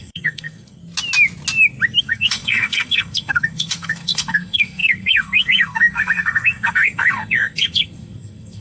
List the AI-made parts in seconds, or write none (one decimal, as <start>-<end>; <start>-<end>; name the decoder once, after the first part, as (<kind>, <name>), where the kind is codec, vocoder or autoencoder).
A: 0.0-0.8 (codec, SNAC); 2.0-8.6